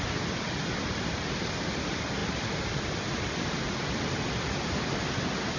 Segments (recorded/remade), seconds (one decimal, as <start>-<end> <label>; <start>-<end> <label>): 0.0-5.6 recorded